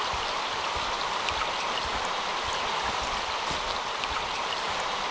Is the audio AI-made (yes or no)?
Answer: no